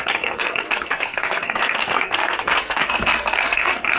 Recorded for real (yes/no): no